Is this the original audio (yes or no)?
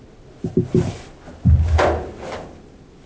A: yes